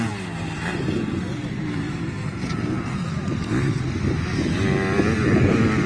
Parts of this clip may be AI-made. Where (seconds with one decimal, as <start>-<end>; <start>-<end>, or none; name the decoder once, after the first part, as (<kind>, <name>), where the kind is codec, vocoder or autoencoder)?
0.7-3.5 (vocoder, BigVGAN v2)